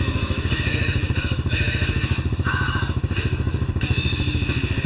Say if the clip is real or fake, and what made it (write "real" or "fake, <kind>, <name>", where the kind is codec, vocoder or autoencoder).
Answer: fake, autoencoder, DAC-VAE